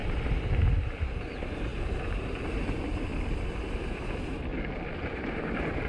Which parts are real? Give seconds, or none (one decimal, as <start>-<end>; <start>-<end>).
3.1-3.7; 4.5-5.0